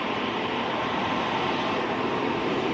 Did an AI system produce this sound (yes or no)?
no